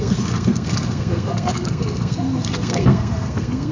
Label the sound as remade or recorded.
remade